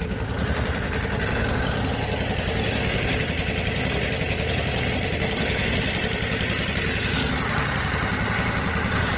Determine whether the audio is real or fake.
real